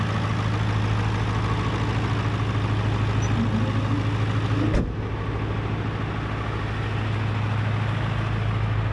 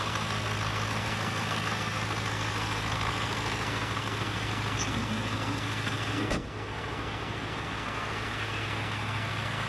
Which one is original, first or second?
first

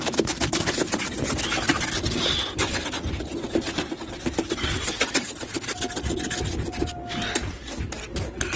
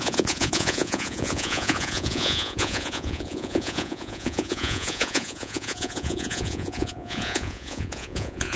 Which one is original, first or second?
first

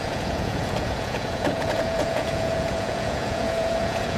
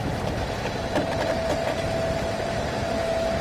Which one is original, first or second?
second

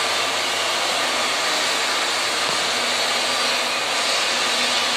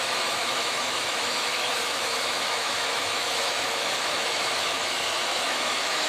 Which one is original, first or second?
first